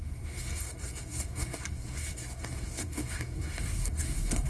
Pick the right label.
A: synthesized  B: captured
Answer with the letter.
A